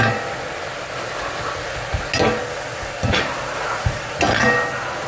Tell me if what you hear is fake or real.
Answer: real